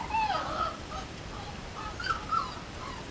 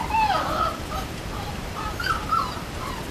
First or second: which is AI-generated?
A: second